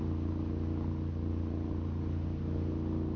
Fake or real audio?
real